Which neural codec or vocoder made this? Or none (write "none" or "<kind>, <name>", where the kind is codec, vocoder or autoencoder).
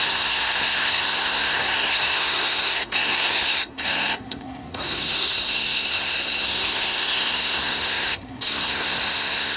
codec, SNAC